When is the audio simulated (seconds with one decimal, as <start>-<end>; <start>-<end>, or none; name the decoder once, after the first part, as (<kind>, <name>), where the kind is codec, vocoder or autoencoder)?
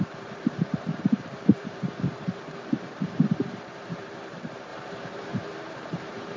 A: 0.0-6.4 (vocoder, BigVGAN v2)